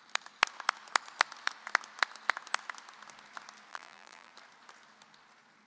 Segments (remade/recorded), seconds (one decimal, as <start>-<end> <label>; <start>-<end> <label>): 0.0-3.7 recorded; 3.7-4.3 remade; 4.3-5.7 recorded